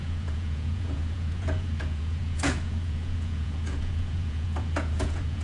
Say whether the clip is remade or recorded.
remade